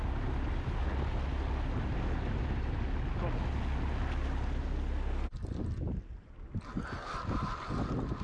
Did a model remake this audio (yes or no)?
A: no